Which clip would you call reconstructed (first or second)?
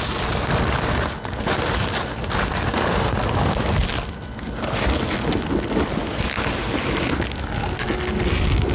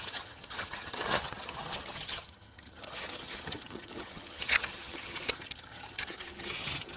second